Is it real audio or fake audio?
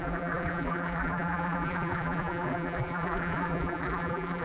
fake